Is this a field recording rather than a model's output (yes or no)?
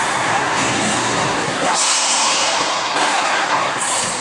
no